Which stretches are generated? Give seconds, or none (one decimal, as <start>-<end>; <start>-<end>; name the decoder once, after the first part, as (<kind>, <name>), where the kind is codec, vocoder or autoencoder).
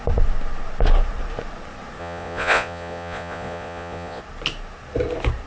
2.0-4.2 (vocoder, Vocos)